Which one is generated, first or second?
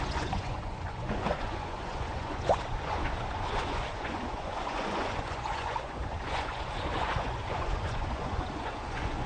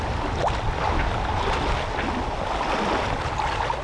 first